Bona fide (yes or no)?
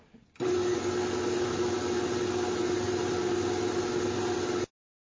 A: yes